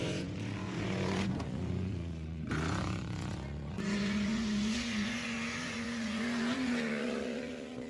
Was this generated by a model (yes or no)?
yes